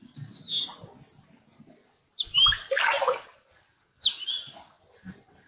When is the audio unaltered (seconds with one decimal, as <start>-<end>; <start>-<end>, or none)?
0.0-5.5